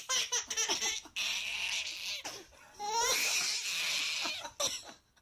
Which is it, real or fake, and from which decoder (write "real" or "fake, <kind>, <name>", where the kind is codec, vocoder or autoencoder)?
real